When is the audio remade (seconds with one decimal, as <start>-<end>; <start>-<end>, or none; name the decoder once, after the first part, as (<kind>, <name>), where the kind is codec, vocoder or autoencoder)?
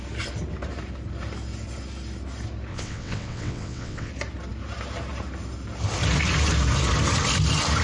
2.7-4.1 (vocoder, WaveNeXt)